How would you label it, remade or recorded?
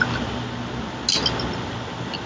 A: recorded